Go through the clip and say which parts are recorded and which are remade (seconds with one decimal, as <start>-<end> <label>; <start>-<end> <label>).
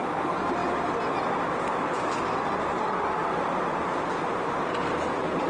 0.0-5.5 recorded